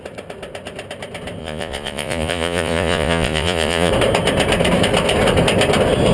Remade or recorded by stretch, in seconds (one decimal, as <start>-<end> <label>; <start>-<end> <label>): 0.0-1.4 recorded; 1.4-3.9 remade; 3.9-6.1 recorded